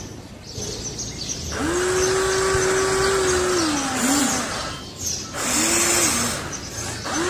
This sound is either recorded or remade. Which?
recorded